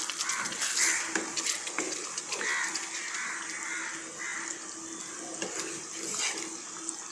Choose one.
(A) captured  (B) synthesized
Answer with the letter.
A